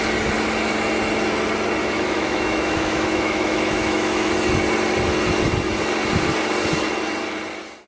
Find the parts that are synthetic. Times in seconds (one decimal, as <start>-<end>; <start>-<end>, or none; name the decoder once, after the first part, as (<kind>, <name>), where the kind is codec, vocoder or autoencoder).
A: 1.8-4.3 (autoencoder, DAC-VAE)